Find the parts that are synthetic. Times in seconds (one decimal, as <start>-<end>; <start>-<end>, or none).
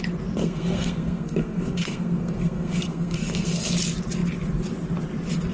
0.4-3.7